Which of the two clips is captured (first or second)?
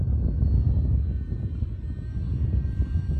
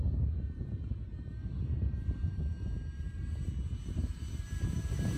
first